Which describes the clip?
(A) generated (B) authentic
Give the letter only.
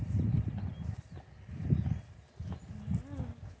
B